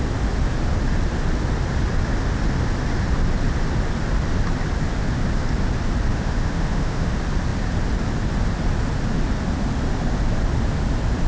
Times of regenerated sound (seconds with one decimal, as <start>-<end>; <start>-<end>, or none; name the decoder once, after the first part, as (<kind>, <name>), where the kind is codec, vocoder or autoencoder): 6.1-7.1 (autoencoder, DAC-VAE)